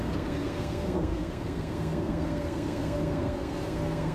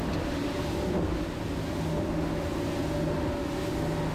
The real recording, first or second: second